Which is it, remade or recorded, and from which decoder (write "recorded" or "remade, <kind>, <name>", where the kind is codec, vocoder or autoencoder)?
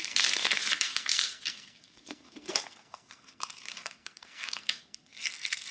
remade, codec, SNAC